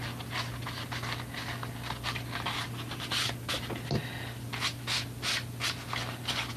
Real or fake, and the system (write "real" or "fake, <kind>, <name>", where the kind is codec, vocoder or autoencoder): real